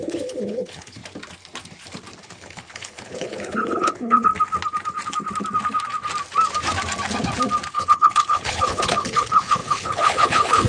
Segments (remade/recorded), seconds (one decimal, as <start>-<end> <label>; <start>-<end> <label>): 0.0-1.0 remade; 1.0-2.2 recorded; 2.2-4.3 remade; 4.3-7.7 recorded; 7.7-10.7 remade